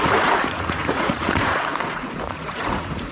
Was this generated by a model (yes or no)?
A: yes